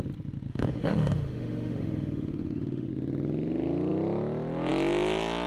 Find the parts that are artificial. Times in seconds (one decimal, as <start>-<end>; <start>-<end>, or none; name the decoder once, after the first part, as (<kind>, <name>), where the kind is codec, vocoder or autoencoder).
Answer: 0.5-2.9 (autoencoder, DAC-VAE)